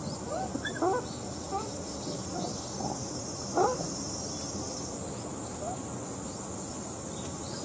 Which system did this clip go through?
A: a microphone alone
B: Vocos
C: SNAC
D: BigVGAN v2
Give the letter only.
A